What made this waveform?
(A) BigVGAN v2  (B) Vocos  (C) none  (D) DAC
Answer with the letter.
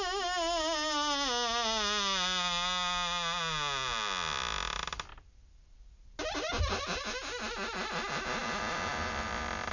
C